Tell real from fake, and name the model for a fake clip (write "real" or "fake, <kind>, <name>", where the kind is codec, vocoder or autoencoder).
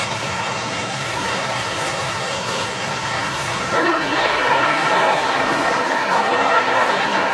fake, codec, SNAC